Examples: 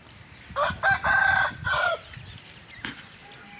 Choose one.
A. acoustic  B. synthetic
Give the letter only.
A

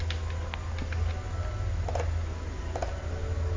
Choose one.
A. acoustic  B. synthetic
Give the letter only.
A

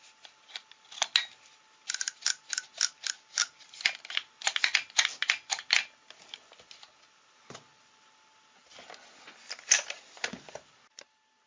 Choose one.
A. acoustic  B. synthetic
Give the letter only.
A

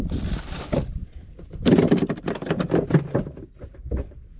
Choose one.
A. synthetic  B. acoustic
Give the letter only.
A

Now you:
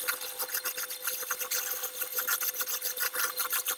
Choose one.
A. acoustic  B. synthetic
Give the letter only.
A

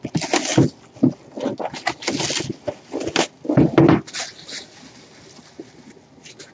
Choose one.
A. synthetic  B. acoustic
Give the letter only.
B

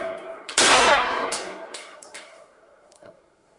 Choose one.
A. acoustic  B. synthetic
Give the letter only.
B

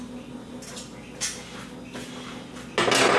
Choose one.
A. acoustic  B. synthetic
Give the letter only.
A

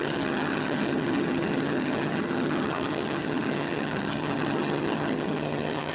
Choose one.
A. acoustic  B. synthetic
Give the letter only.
B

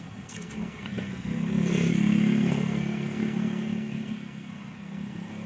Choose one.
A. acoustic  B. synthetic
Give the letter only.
B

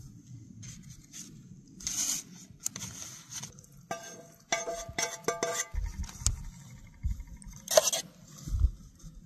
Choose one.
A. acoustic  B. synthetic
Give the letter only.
A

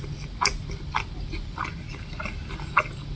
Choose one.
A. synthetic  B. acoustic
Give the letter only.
B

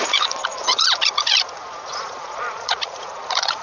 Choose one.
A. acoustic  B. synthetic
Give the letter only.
B